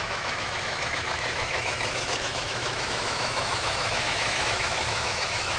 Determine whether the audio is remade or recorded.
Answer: remade